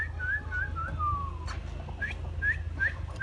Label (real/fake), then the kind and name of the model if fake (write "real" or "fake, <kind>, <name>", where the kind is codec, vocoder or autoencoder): real